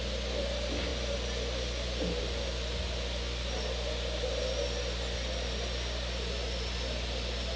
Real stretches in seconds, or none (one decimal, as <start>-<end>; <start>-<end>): 0.0-7.6